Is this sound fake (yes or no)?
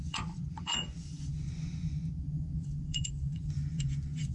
yes